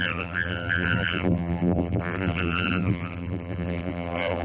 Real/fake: fake